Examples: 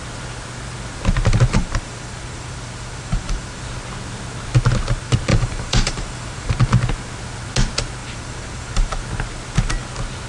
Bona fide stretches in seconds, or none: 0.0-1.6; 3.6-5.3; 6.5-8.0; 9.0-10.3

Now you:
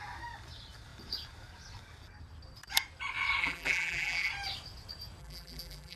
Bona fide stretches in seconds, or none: 0.0-3.4; 4.3-5.2